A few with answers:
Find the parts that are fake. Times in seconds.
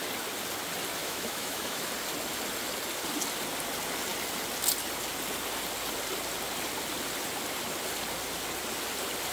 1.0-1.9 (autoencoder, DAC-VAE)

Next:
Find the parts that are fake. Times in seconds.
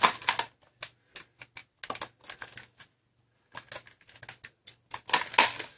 none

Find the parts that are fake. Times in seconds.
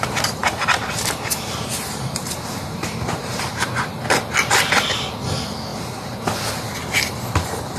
0.4-4.0 (vocoder, BigVGAN v2); 5.7-6.2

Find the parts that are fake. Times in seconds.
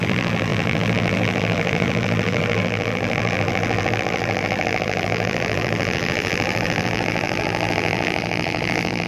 0.0-9.1 (vocoder, BigVGAN v2)